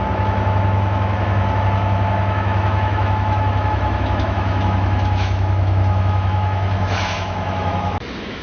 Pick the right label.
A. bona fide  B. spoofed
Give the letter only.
B